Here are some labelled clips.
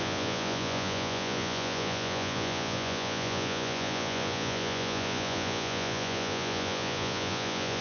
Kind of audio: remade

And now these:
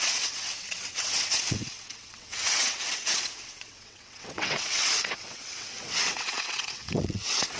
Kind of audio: remade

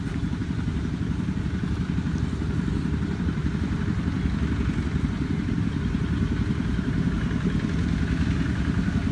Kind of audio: recorded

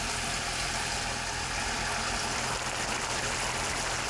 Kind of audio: recorded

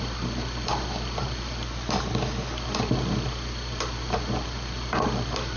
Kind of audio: recorded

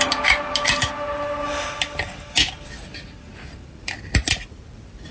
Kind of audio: recorded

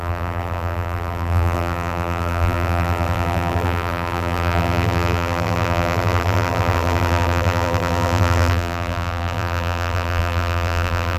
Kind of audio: remade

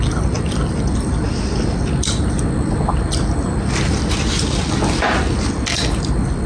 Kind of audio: recorded